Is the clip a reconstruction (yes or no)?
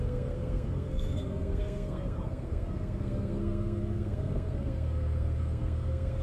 yes